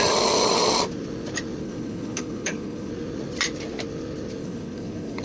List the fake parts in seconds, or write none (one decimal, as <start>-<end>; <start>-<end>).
1.6-2.9; 4.4-5.2